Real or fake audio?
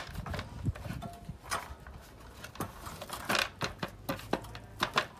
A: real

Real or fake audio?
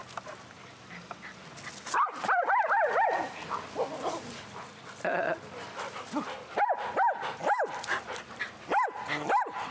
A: real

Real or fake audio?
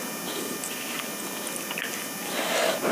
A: real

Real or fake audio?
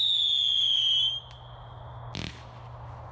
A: real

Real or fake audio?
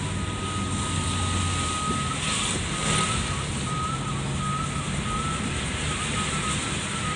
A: real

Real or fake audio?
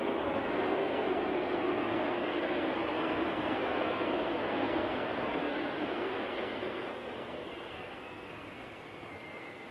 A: fake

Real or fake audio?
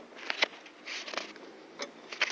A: real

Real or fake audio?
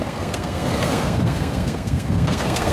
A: fake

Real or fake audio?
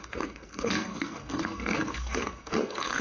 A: fake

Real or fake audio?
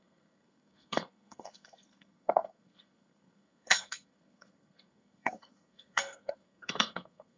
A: fake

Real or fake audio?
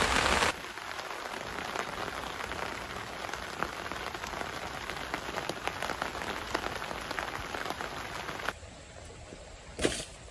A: real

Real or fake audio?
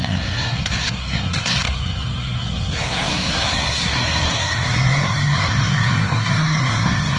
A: fake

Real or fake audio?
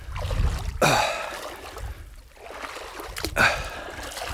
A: real